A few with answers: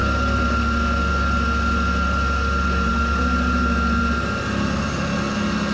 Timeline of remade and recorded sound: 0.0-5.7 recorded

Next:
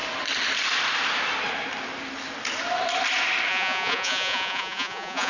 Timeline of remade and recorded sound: 0.0-3.5 recorded; 3.5-5.3 remade

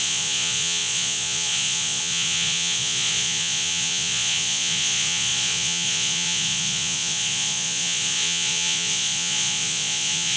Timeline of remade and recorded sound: 0.0-10.4 remade